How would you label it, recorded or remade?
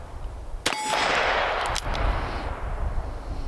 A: recorded